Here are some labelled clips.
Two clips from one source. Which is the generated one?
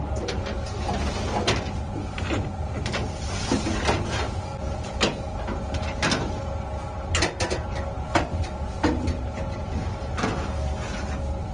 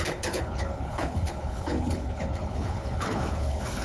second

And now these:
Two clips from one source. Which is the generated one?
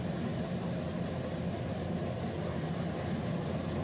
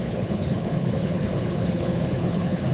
second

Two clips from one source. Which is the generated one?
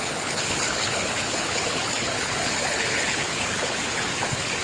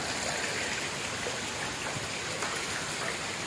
first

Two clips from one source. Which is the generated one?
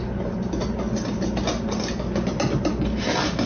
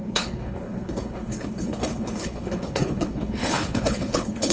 second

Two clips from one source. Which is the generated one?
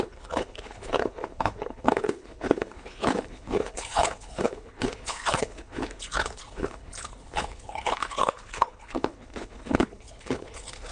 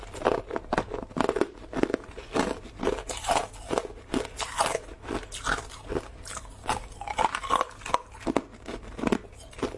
first